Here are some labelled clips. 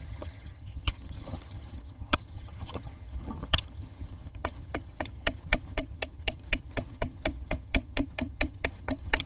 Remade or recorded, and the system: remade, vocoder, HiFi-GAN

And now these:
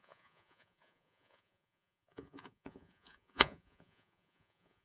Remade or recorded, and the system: remade, vocoder, Vocos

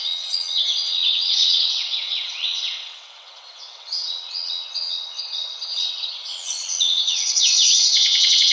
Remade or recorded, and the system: remade, vocoder, WaveNeXt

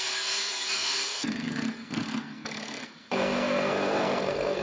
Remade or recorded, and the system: remade, codec, SNAC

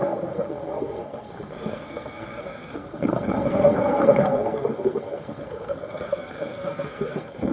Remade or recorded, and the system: remade, codec, SNAC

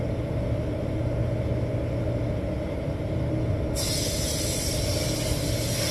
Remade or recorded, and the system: recorded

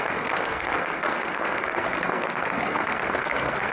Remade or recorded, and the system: remade, codec, SNAC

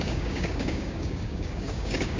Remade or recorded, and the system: remade, codec, DAC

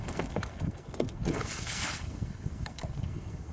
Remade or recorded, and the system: remade, codec, SNAC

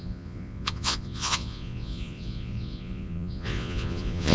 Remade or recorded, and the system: remade, vocoder, Vocos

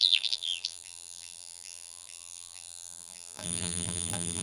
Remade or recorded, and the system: remade, vocoder, BigVGAN v2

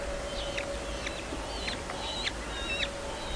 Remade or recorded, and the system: recorded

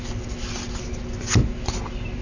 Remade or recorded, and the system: recorded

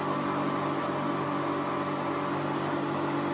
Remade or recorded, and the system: recorded